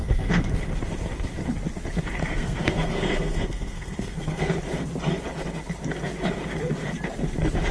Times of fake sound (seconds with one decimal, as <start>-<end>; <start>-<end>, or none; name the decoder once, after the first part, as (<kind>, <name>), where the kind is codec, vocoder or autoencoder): 0.0-0.5 (codec, SNAC); 2.2-4.5